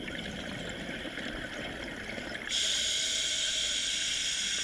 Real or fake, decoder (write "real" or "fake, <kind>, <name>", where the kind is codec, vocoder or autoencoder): real